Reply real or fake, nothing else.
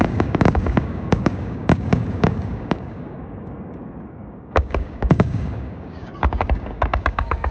fake